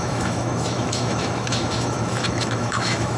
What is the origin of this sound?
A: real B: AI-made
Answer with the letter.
B